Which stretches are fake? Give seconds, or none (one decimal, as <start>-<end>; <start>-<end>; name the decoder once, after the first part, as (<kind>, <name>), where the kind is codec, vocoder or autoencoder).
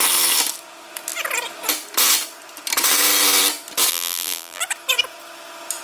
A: 3.9-4.6 (vocoder, BigVGAN v2)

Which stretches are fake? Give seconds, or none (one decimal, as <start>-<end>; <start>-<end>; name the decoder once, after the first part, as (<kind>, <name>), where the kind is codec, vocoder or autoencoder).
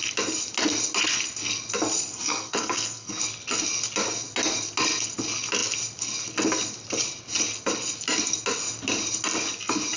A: 2.1-3.1 (codec, SNAC)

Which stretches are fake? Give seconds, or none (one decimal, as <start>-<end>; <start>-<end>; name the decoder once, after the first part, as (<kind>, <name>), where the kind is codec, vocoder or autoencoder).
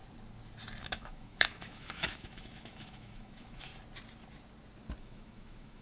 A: 0.8-3.7 (autoencoder, DAC-VAE); 5.0-5.8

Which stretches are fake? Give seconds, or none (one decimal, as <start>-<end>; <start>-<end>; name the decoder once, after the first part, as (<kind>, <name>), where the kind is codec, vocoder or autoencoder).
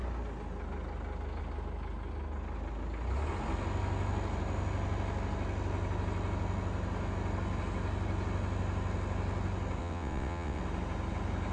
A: 9.8-10.6 (vocoder, WaveNeXt)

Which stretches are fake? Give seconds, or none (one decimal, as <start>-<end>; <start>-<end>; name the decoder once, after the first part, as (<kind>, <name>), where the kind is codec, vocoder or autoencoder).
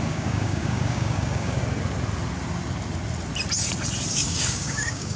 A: 0.0-1.6 (codec, DAC); 4.1-5.2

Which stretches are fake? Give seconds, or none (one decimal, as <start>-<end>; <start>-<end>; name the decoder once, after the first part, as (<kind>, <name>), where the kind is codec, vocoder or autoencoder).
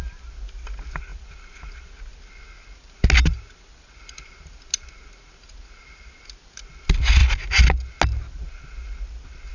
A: none